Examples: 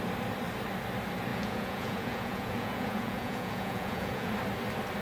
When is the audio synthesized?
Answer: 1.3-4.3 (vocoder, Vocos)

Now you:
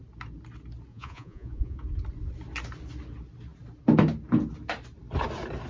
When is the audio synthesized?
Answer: 0.9-1.8 (vocoder, Vocos)